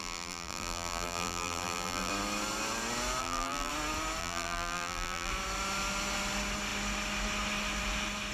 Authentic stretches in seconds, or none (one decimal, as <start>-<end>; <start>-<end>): 2.1-3.2; 3.7-4.2; 5.3-8.3

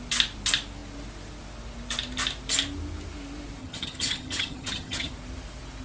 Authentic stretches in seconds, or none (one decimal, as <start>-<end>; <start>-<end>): 0.0-3.6; 5.1-5.8